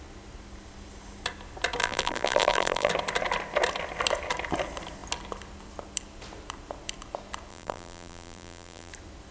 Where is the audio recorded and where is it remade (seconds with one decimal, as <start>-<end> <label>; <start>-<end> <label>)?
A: 0.0-1.8 recorded; 1.8-2.9 remade; 2.9-7.5 recorded; 7.5-8.9 remade; 8.9-9.3 recorded